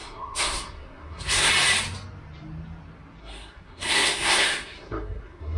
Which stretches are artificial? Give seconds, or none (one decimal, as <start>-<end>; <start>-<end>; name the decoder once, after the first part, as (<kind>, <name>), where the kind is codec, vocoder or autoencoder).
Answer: 0.0-1.5 (codec, SNAC); 3.2-5.6